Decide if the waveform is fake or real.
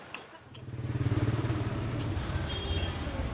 fake